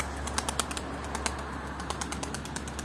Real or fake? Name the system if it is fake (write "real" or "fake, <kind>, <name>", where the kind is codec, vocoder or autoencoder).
real